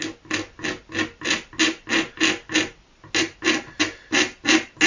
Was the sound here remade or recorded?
recorded